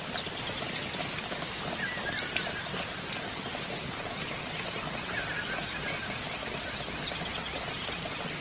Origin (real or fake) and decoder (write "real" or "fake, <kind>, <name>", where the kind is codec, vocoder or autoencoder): real